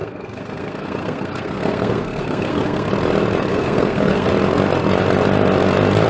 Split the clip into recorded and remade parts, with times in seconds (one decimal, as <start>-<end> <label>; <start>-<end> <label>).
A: 0.0-2.9 remade; 2.9-3.5 recorded; 3.5-4.3 remade; 4.3-6.1 recorded